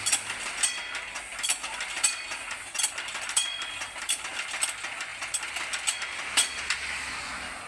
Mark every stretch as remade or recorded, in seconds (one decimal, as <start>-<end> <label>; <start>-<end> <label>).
0.0-7.7 recorded